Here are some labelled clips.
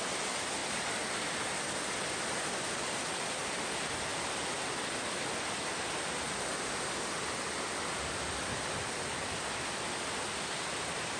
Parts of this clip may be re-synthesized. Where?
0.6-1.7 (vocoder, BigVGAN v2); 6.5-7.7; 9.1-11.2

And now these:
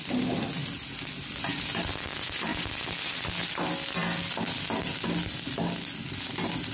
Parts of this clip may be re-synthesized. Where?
0.0-0.6 (vocoder, BigVGAN v2); 1.8-2.5

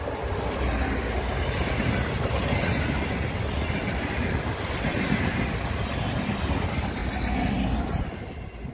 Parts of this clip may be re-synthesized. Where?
none